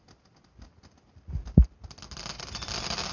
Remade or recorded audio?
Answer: recorded